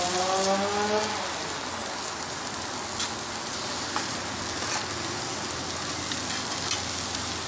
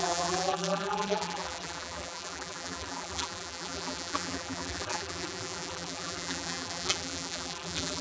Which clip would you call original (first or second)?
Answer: first